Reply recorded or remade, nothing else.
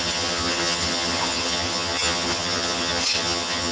remade